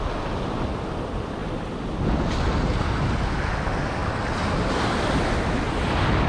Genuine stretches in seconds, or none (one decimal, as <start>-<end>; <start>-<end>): 0.0-6.3